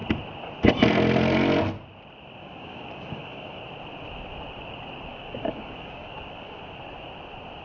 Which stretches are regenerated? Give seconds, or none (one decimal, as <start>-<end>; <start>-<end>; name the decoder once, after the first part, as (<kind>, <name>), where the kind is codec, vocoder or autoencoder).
2.4-3.6 (codec, DAC); 5.1-6.6